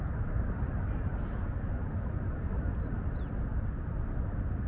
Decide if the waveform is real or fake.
real